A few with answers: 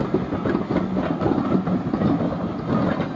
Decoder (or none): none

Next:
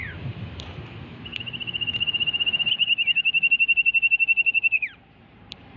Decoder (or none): vocoder, BigVGAN v2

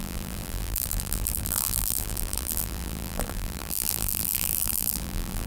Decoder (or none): vocoder, BigVGAN v2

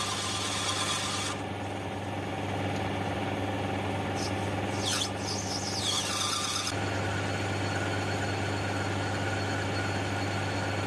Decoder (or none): none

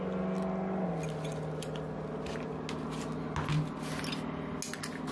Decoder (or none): none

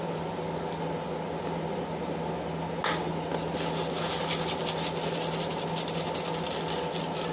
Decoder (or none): none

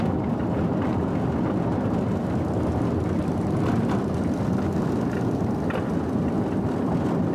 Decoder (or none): none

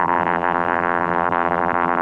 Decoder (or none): vocoder, BigVGAN v2